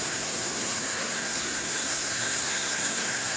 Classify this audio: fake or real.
fake